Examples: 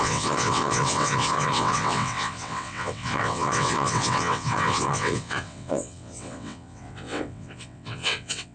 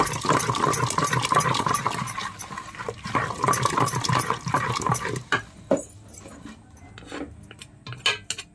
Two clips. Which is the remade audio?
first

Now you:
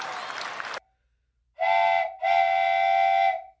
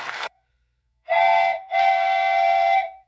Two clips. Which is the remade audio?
second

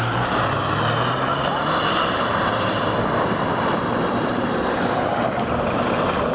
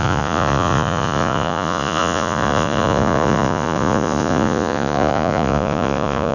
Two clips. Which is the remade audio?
second